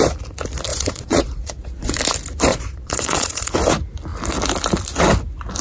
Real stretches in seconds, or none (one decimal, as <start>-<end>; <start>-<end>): 0.0-0.7; 2.0-2.5; 3.5-5.6